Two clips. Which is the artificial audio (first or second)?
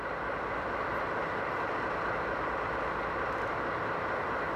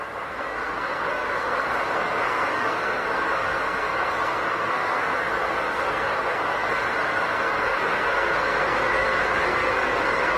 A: second